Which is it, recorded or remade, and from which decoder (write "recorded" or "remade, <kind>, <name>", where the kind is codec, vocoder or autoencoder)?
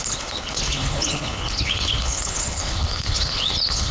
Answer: remade, codec, HILCodec